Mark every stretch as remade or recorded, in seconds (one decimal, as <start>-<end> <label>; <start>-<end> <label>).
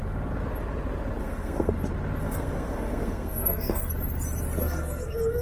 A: 0.0-1.2 recorded; 1.2-1.7 remade; 1.7-2.2 recorded; 2.2-3.9 remade; 3.9-4.6 recorded; 4.6-5.4 remade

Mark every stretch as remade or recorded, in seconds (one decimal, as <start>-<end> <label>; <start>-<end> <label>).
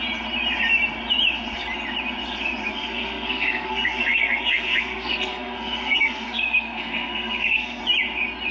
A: 0.0-2.7 recorded; 2.7-7.8 remade; 7.8-8.5 recorded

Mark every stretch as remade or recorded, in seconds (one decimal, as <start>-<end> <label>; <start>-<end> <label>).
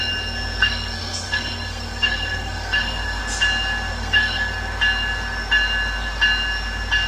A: 0.0-0.6 recorded; 0.6-3.2 remade; 3.2-3.9 recorded; 3.9-4.5 remade; 4.5-7.1 recorded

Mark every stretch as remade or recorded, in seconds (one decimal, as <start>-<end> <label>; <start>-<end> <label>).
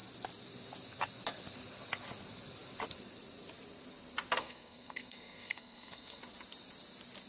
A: 0.0-4.4 recorded; 4.4-6.2 remade; 6.2-7.3 recorded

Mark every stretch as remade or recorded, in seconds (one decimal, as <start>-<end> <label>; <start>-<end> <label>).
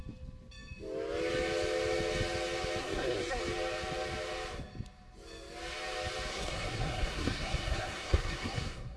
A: 0.0-2.8 recorded; 2.8-3.4 remade; 3.4-6.3 recorded; 6.3-9.0 remade